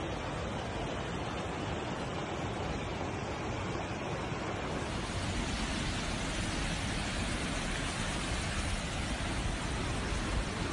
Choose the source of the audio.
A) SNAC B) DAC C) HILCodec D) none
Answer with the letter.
D